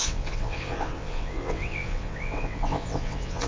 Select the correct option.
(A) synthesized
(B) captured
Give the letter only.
A